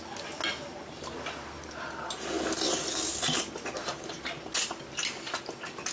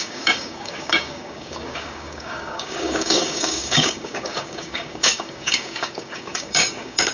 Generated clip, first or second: second